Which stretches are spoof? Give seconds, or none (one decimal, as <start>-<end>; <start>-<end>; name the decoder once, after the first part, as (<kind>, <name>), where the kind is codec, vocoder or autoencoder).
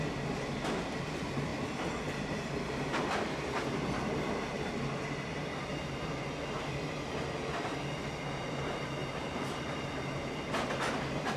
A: 9.0-10.1 (vocoder, BigVGAN v2)